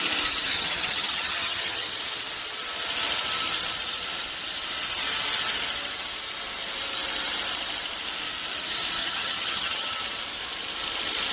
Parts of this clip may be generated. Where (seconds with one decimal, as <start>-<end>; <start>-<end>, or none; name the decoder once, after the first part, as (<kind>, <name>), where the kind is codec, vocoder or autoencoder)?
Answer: 0.5-2.0 (vocoder, HiFi-GAN); 9.0-10.0